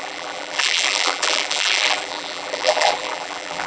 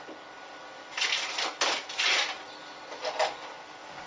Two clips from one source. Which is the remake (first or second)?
first